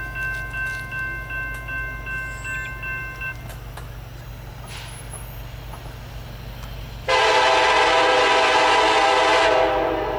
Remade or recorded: recorded